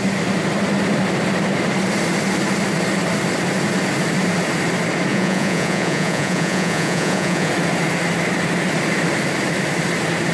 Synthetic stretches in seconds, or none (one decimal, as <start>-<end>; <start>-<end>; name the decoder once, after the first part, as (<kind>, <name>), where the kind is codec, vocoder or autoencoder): 5.1-7.5 (vocoder, Vocos)